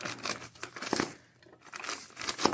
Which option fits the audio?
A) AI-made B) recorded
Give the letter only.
B